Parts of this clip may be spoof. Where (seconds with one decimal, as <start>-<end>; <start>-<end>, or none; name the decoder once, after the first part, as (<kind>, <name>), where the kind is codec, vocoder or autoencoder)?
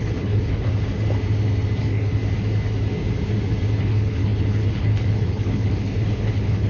0.0-0.7 (codec, HILCodec); 1.8-2.2; 3.8-6.7